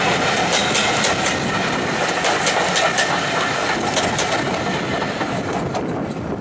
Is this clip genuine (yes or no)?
yes